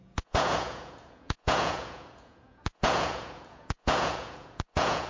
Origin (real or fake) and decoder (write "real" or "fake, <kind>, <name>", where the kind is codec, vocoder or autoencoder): fake, vocoder, Vocos